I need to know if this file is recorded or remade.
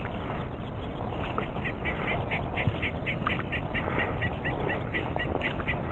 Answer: recorded